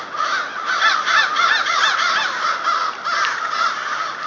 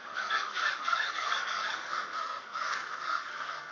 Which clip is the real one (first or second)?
first